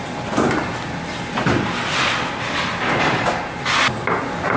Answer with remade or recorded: recorded